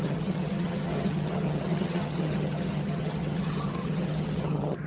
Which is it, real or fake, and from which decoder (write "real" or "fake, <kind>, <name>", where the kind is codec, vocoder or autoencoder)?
fake, vocoder, HiFi-GAN